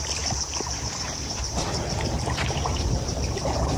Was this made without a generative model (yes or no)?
no